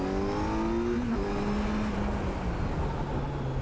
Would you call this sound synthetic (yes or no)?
no